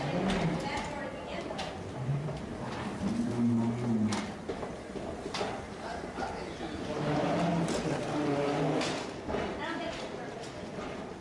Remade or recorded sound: recorded